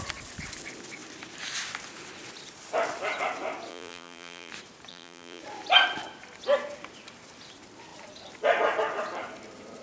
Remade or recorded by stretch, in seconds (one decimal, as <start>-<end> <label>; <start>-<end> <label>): 0.0-3.7 recorded; 3.7-4.5 remade; 4.5-4.9 recorded; 4.9-5.4 remade; 5.4-9.8 recorded